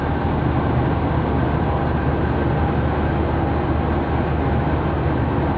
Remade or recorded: recorded